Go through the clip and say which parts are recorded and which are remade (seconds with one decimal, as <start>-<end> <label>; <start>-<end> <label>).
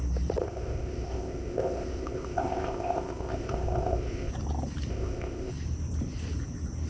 0.0-0.4 recorded; 0.4-4.3 remade; 4.3-4.9 recorded; 4.9-5.5 remade; 5.5-6.9 recorded